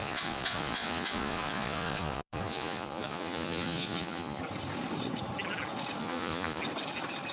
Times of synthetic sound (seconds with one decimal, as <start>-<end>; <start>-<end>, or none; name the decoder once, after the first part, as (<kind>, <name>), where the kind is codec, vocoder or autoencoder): 0.0-4.4 (vocoder, Vocos); 6.0-6.6